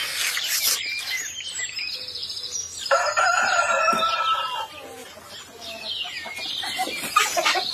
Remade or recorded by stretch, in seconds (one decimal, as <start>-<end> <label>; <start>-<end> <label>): 0.0-0.6 remade; 0.6-2.2 recorded; 2.2-5.1 remade; 5.1-7.7 recorded